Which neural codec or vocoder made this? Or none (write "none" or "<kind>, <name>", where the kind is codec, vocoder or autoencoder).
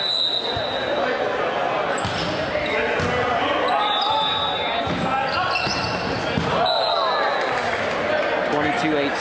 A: none